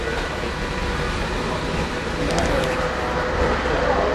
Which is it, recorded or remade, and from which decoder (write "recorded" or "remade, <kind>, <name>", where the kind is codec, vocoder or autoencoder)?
recorded